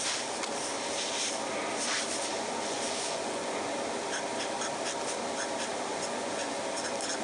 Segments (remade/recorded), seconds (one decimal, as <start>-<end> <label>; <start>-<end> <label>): 0.0-2.3 recorded; 2.3-3.7 remade; 3.7-5.9 recorded; 5.9-6.6 remade; 6.6-7.2 recorded